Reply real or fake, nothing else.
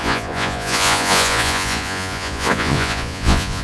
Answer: fake